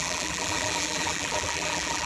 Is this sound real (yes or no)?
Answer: no